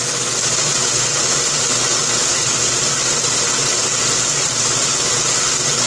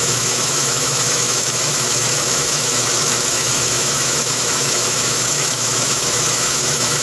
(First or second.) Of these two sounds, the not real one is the second